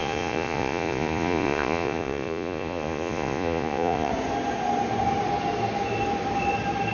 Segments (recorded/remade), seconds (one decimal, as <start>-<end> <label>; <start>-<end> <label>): 0.0-4.1 remade; 4.1-6.9 recorded